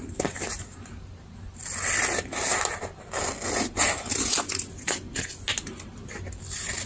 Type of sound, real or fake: real